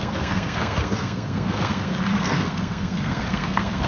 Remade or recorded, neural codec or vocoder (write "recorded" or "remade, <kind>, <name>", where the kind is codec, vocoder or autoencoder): remade, codec, SNAC